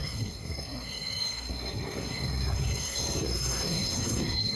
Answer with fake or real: fake